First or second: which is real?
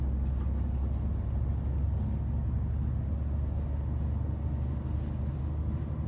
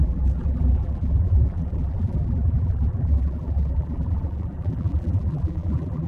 first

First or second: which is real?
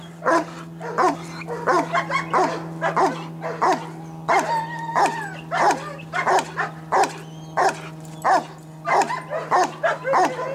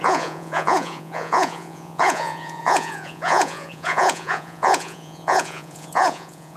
first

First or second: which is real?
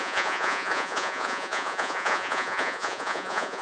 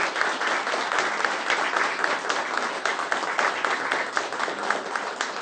second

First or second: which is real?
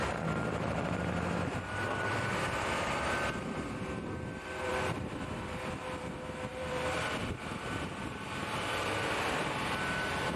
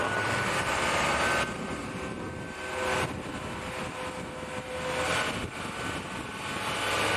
second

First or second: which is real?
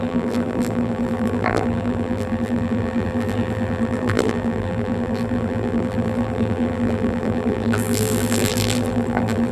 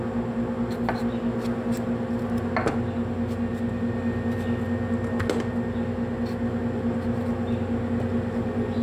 second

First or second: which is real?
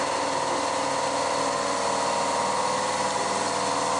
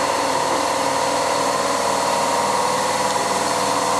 first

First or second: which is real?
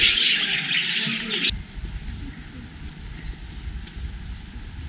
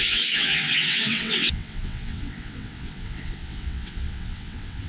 first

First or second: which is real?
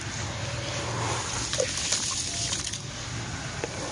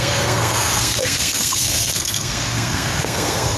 first